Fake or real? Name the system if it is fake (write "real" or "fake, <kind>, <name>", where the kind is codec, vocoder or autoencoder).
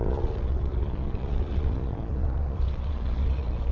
fake, vocoder, Vocos